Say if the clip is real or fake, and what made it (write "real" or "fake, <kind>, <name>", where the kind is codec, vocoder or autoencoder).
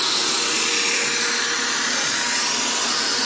real